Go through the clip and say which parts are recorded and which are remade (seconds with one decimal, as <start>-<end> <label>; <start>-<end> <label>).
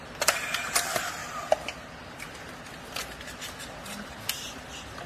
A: 0.0-1.2 remade; 1.2-3.6 recorded; 3.6-5.1 remade